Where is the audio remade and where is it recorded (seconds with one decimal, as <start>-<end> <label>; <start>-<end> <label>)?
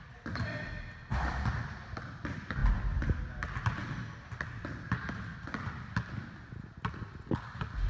0.0-1.1 recorded; 1.1-1.8 remade; 1.8-7.9 recorded